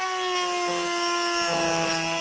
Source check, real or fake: real